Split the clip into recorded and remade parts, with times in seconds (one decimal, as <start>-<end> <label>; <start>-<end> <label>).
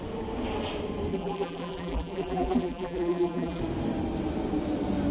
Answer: 0.0-1.1 recorded; 1.1-3.6 remade; 3.6-5.1 recorded